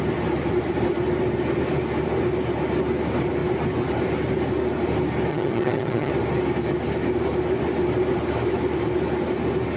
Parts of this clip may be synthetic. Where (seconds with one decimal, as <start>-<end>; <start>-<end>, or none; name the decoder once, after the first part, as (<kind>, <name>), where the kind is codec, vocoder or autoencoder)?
5.3-6.1 (vocoder, HiFi-GAN)